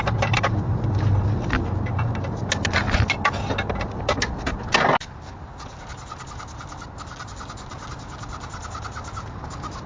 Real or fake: real